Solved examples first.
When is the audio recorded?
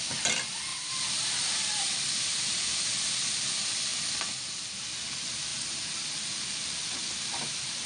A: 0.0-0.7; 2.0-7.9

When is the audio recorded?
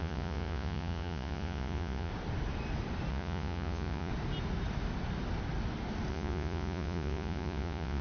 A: 2.1-3.1; 4.1-6.1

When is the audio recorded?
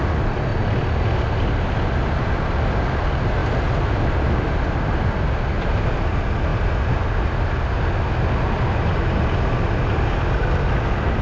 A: 0.0-11.2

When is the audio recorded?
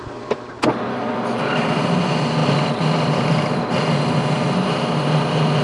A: 0.0-0.9; 1.4-5.6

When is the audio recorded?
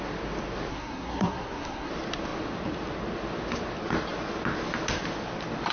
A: 0.0-0.7; 1.9-5.7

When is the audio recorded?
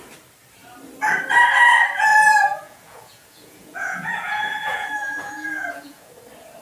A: 0.0-2.1; 6.1-6.6